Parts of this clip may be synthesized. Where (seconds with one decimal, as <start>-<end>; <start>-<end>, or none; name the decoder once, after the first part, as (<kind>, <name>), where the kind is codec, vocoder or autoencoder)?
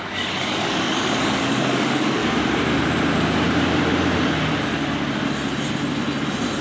0.0-2.2 (codec, DAC)